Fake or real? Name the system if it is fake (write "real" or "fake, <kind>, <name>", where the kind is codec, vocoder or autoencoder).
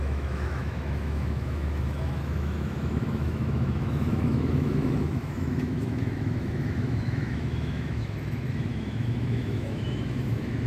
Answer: fake, autoencoder, DAC-VAE